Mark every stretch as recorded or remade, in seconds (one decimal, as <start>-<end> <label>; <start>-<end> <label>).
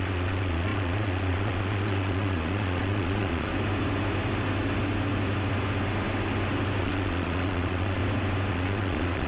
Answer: 0.0-3.5 remade; 3.5-6.8 recorded; 6.8-8.0 remade; 8.0-8.5 recorded; 8.5-9.3 remade